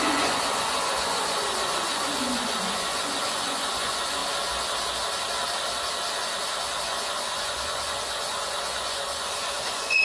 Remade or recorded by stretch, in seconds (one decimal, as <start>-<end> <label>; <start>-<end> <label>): 0.0-4.2 remade; 4.2-6.8 recorded; 6.8-10.0 remade